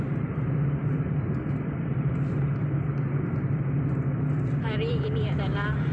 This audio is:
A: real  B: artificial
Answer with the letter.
B